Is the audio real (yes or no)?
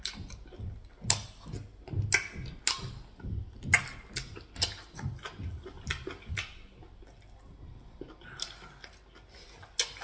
yes